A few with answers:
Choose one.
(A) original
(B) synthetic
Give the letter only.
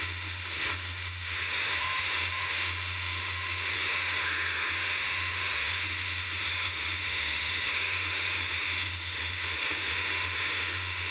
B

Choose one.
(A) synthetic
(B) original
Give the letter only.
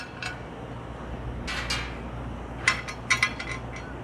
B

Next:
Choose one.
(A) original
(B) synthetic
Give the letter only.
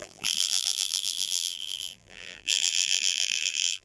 B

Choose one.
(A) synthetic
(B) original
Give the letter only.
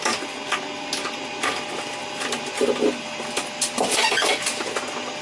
B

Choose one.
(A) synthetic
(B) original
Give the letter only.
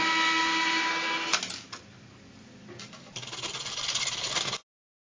B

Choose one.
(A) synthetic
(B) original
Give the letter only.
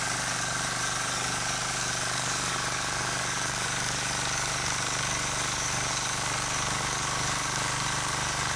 A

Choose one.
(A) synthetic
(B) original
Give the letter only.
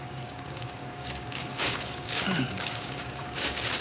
A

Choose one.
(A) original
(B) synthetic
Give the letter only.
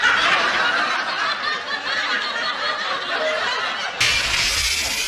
A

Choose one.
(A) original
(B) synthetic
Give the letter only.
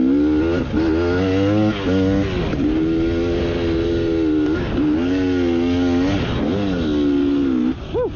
A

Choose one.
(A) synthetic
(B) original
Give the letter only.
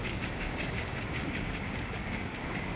A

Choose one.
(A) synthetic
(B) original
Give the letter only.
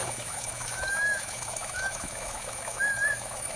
A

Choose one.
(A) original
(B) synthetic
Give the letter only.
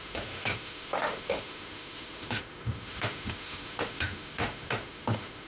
B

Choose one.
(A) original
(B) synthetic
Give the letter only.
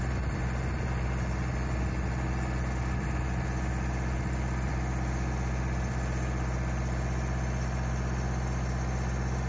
A